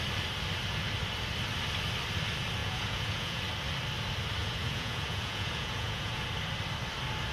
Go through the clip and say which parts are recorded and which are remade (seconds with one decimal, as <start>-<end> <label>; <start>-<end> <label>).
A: 0.0-2.6 recorded; 2.6-3.4 remade; 3.4-4.4 recorded; 4.4-6.2 remade; 6.2-7.3 recorded